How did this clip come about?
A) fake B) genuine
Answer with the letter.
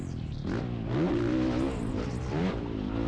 B